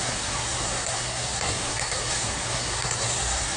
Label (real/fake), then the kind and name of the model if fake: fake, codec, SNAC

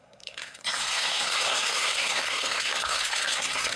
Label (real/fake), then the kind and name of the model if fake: fake, codec, SNAC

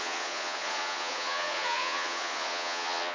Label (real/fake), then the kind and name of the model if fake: fake, vocoder, Vocos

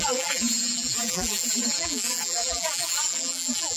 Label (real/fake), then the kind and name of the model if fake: fake, vocoder, BigVGAN v2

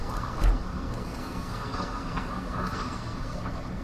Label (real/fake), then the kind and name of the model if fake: fake, codec, SNAC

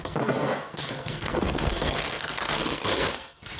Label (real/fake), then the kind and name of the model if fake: fake, codec, SNAC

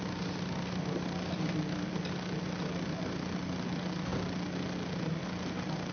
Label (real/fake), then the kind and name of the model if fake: real